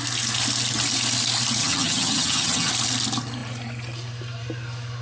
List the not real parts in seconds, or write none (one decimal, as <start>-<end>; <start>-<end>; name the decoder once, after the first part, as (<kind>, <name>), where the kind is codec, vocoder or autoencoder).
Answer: 1.6-2.7 (vocoder, HiFi-GAN)